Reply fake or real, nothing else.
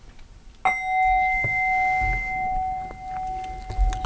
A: real